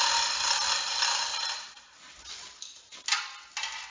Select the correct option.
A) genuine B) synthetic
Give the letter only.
A